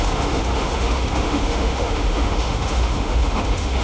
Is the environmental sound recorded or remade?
remade